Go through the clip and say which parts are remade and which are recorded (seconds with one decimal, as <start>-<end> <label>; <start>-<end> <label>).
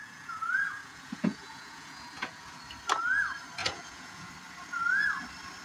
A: 0.0-2.6 remade; 2.6-3.6 recorded; 3.6-4.3 remade; 4.3-5.6 recorded